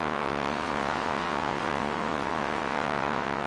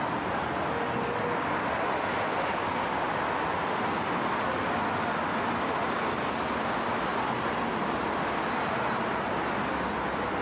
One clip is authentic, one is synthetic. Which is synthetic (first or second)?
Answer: first